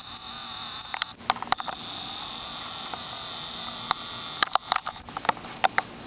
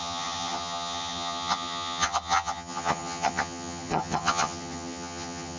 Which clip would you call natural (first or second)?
first